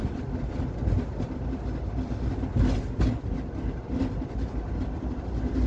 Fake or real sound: real